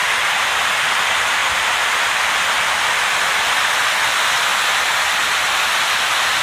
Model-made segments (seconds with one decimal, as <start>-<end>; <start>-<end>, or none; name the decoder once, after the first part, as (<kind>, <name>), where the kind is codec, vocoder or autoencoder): 0.0-0.6 (vocoder, BigVGAN v2); 1.4-3.7